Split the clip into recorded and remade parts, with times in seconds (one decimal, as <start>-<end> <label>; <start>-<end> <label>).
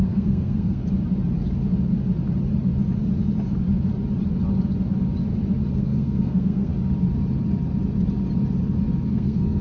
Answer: 0.0-0.8 remade; 0.8-5.7 recorded; 5.7-6.7 remade; 6.7-9.1 recorded; 9.1-9.6 remade